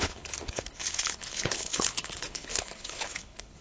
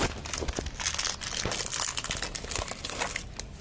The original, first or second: second